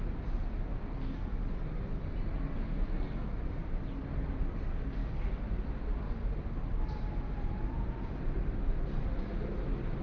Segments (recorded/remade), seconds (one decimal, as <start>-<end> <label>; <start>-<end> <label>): 0.0-10.0 recorded